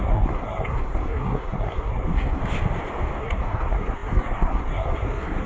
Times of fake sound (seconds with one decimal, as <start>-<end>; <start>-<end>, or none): 0.0-2.4; 3.2-5.5